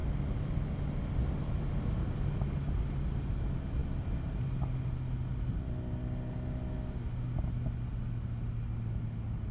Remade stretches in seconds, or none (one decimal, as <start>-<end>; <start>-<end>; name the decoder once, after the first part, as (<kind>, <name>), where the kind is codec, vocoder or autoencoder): none